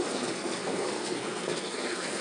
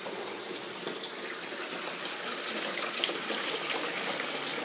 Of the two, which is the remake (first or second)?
first